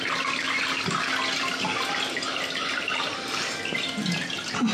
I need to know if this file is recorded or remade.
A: recorded